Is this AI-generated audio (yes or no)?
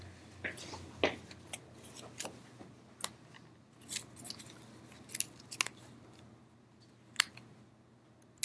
no